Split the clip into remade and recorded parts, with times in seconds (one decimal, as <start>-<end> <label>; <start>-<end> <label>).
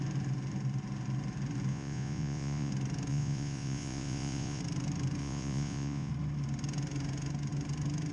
0.0-1.7 recorded; 1.7-2.7 remade; 2.7-3.1 recorded; 3.1-4.6 remade; 4.6-5.2 recorded; 5.2-6.1 remade; 6.1-8.1 recorded